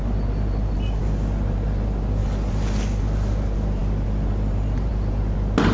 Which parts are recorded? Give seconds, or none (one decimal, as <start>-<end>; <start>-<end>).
0.0-5.7